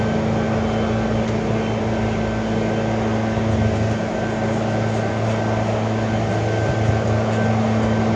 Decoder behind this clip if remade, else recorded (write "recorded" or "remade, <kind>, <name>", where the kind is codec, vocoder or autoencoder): recorded